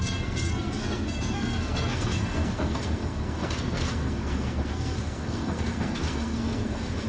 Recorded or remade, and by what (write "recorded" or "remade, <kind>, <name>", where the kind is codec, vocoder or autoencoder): remade, codec, SNAC